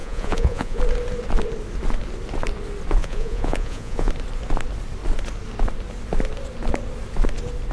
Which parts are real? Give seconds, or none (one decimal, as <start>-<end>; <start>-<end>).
0.8-3.0; 4.1-7.7